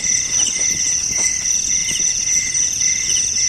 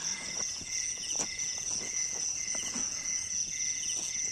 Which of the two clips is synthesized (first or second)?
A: second